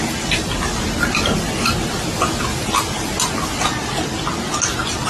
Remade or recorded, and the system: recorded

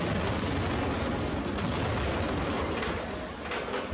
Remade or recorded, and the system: recorded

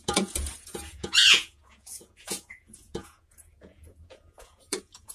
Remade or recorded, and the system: remade, vocoder, Vocos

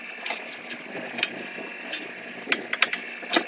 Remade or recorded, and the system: recorded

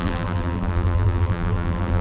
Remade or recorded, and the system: remade, vocoder, BigVGAN v2